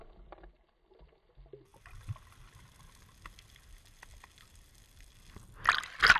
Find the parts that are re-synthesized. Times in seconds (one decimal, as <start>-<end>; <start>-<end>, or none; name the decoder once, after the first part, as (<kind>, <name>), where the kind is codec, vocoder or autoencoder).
none